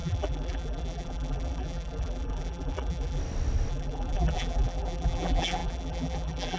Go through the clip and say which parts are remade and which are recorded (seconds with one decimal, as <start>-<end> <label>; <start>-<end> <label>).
0.0-3.2 remade; 3.2-3.7 recorded; 3.7-6.6 remade